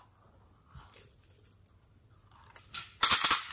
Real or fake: real